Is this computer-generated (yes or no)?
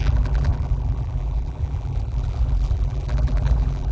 yes